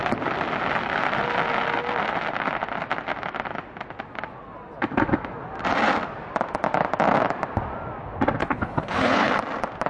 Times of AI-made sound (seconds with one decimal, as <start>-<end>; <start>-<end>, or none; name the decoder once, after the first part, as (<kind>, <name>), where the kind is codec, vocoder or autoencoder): 8.4-9.3 (codec, HILCodec)